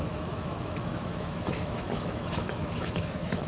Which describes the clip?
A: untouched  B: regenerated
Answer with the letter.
B